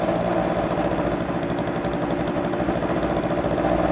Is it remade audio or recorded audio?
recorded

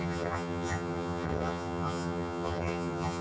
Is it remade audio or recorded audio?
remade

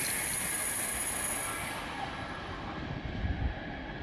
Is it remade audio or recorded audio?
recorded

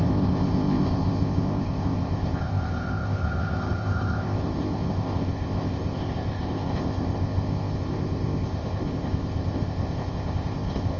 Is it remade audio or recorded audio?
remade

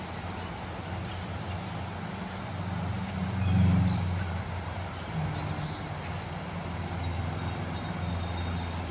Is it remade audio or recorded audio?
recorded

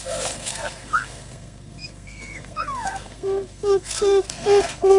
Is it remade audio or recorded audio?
remade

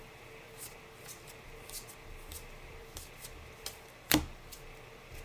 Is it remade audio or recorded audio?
remade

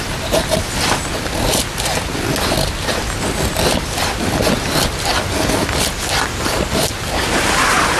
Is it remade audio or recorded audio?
recorded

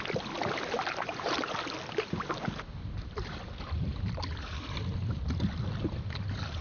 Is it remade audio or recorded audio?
recorded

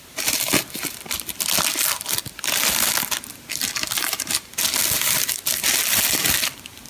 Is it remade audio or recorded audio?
recorded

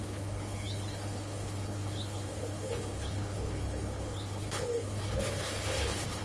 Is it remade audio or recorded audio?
remade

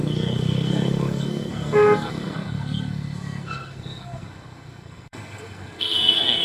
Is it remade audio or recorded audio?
remade